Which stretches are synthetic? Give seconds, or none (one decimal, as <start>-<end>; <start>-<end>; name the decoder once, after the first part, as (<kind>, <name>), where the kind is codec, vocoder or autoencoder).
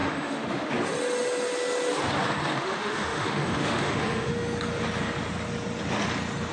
0.0-0.7 (autoencoder, DAC-VAE); 2.5-4.3